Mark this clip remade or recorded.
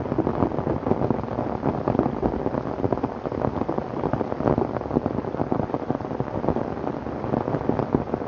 recorded